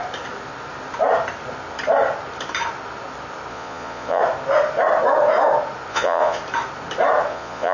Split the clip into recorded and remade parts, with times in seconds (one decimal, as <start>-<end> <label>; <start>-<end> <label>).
0.0-3.5 recorded; 3.5-4.2 remade; 4.2-5.9 recorded; 5.9-6.4 remade; 6.4-7.3 recorded; 7.3-7.7 remade